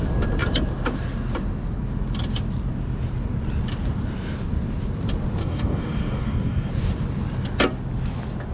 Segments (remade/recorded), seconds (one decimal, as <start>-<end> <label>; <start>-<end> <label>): 0.0-5.4 recorded; 5.4-6.7 remade; 6.7-8.5 recorded